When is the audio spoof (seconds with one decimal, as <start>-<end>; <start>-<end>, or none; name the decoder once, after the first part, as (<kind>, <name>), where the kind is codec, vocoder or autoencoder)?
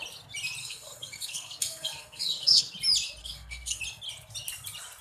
0.6-2.6 (codec, SNAC); 3.2-3.8